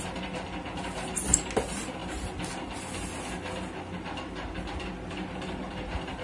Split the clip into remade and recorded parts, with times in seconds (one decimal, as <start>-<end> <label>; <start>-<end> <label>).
0.0-6.2 recorded